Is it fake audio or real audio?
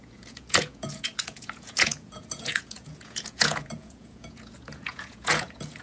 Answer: fake